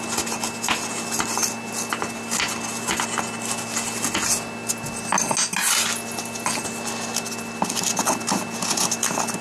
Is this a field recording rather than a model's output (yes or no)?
yes